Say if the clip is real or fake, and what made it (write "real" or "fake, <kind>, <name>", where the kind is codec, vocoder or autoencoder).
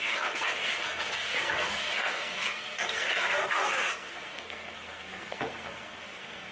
fake, codec, SNAC